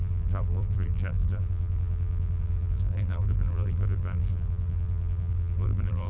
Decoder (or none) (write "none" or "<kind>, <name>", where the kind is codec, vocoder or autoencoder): vocoder, BigVGAN v2